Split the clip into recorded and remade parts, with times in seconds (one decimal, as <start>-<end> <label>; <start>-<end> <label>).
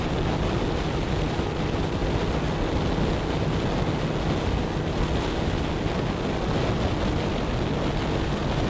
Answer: 0.0-8.7 recorded